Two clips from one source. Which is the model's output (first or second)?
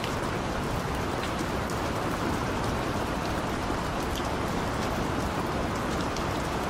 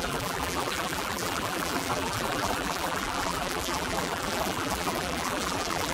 second